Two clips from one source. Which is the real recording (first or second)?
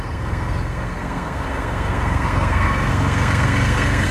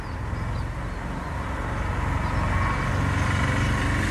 second